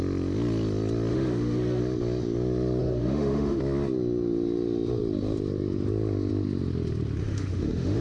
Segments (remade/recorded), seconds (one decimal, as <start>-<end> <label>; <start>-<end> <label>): 0.0-1.1 recorded; 1.1-1.8 remade; 1.8-2.8 recorded; 2.8-3.6 remade; 3.6-7.2 recorded; 7.2-8.0 remade